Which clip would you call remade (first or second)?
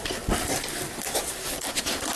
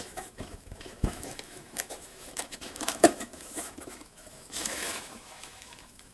second